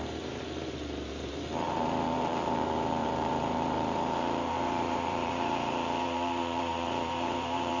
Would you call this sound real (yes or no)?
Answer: no